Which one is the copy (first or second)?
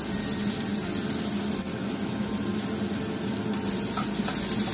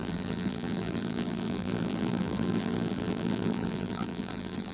second